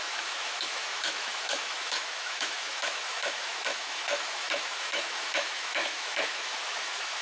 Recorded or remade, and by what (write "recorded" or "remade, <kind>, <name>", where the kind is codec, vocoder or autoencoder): remade, autoencoder, DAC-VAE